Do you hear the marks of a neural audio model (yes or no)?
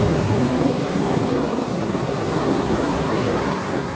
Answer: yes